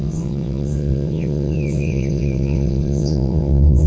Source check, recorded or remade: remade